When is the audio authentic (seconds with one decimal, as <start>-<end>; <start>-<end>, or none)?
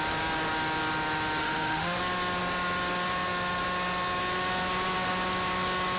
0.0-1.4; 2.0-6.0